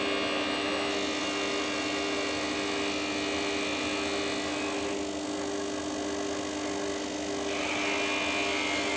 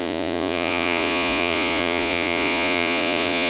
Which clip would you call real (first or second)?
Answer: first